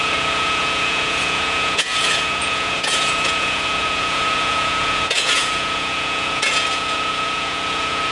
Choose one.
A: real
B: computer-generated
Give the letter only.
B